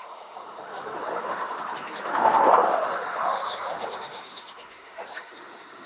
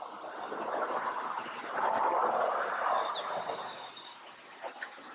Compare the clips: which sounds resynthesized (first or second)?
first